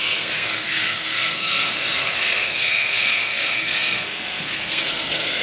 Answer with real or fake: fake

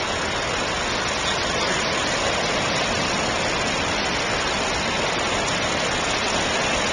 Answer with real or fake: real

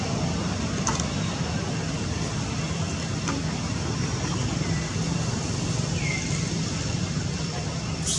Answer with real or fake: real